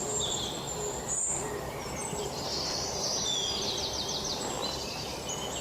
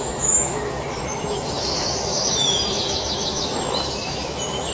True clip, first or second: first